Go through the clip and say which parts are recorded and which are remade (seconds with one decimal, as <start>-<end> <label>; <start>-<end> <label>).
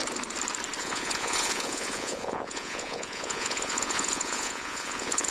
0.0-0.8 recorded; 0.8-5.3 remade